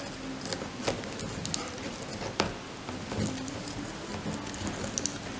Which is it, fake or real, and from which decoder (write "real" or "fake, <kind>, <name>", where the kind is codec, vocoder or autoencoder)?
real